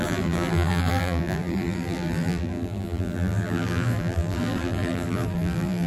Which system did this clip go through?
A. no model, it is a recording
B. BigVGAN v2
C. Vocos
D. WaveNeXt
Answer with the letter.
B